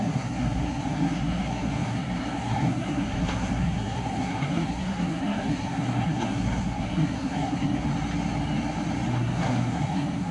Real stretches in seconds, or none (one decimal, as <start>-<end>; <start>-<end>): 7.9-9.1